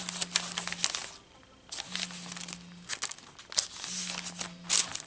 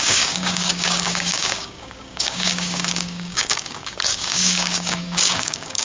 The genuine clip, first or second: first